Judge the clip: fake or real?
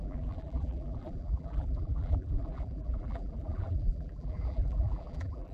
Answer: fake